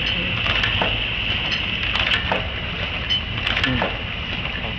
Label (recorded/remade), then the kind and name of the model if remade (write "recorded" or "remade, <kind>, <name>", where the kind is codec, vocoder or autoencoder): recorded